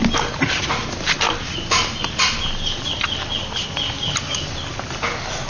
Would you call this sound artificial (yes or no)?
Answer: no